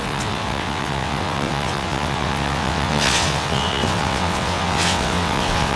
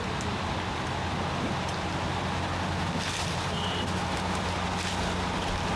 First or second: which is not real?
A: first